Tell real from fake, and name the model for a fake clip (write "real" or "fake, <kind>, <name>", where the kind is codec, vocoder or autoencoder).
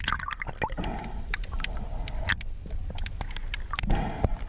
real